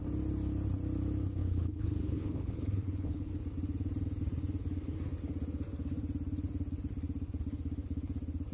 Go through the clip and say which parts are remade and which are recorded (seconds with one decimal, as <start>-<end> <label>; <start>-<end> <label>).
0.0-1.4 recorded; 1.4-3.3 remade; 3.3-8.5 recorded